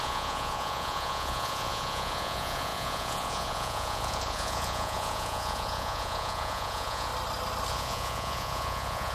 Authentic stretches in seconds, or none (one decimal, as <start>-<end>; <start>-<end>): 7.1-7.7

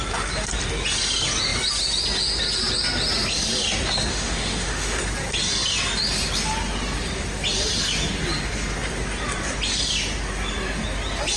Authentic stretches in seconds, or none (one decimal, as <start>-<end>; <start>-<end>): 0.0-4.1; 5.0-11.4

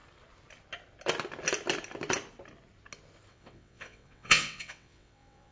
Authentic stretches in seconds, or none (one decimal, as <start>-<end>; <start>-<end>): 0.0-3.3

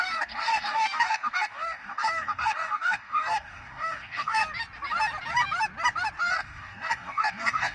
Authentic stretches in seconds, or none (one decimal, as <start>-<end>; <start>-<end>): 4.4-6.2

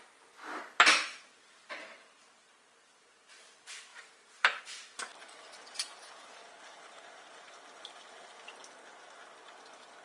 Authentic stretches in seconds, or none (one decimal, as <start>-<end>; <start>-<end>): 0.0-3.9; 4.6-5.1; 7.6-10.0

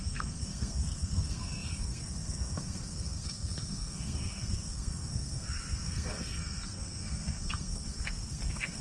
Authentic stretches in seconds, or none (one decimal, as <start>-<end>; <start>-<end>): none

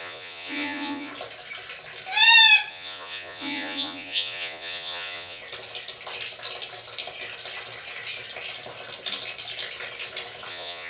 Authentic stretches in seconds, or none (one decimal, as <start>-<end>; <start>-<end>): 1.1-2.7; 5.4-10.5